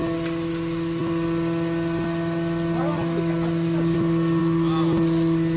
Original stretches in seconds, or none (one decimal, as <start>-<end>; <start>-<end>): 0.0-5.6